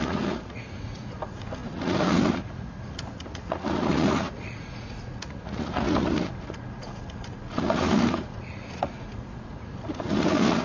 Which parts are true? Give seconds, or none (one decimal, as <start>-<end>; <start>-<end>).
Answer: none